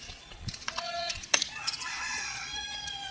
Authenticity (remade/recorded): remade